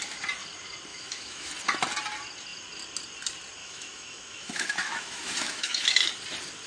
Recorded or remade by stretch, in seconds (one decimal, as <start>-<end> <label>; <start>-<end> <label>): 0.0-0.9 recorded; 0.9-1.5 remade; 1.5-3.6 recorded; 3.6-6.1 remade; 6.1-6.7 recorded